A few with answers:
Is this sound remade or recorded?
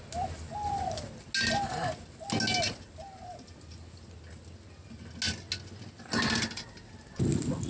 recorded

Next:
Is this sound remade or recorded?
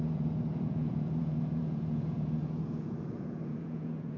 remade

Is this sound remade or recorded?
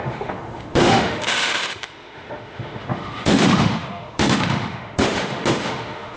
remade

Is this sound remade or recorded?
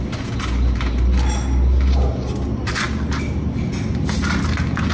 recorded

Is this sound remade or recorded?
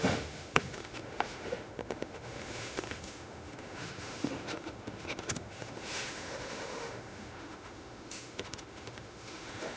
remade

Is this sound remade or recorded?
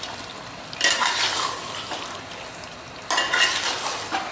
recorded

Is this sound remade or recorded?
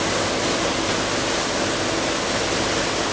recorded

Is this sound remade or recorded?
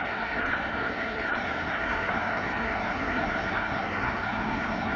remade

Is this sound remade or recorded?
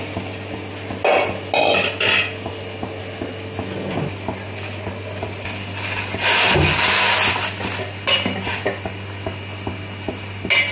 recorded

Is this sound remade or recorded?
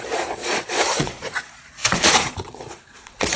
remade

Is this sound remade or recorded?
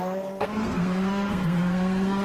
remade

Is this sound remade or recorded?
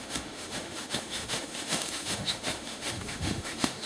remade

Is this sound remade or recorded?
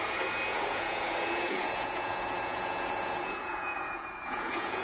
remade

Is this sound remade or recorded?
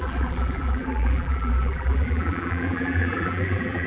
remade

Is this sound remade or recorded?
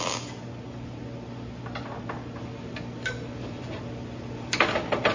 recorded